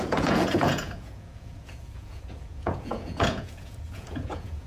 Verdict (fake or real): fake